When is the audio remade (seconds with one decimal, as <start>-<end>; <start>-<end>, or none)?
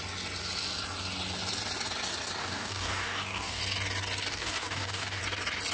2.4-3.6; 4.3-5.2